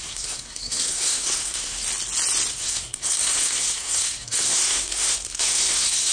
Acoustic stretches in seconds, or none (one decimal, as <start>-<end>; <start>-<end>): 1.8-2.5